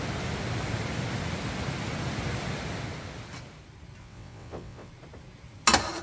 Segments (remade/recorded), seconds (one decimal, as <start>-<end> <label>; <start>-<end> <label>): 0.0-4.0 recorded; 4.0-4.9 remade; 4.9-6.0 recorded